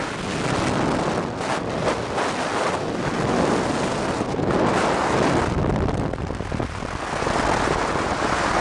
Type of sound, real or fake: real